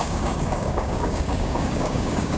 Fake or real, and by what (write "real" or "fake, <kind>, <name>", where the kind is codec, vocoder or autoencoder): fake, codec, DAC